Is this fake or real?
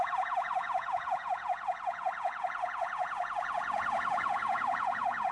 fake